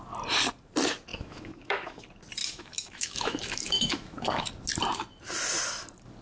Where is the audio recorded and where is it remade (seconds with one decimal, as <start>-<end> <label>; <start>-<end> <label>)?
0.0-1.1 recorded; 1.1-2.0 remade; 2.0-2.4 recorded; 2.4-4.5 remade; 4.5-6.2 recorded